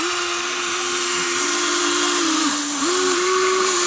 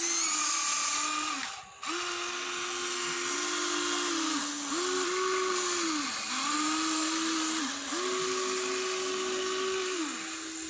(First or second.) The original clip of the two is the second